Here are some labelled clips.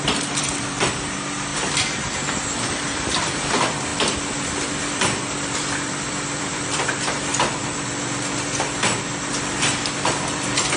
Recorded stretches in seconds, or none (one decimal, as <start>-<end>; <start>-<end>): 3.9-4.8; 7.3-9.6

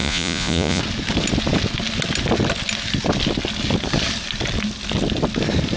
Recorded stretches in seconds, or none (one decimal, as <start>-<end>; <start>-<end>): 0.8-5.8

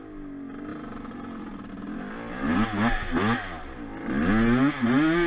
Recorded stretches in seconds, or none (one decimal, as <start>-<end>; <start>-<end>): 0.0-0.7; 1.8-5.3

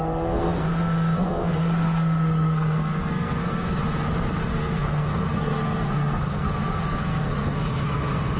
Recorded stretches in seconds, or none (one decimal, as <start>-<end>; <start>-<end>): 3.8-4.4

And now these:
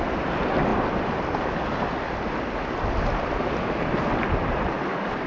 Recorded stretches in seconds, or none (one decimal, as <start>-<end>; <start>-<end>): 0.0-5.3